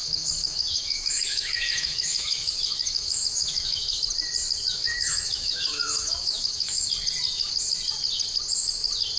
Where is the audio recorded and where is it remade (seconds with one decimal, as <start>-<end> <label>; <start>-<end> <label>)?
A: 0.0-4.0 remade; 4.0-4.8 recorded; 4.8-6.9 remade; 6.9-9.2 recorded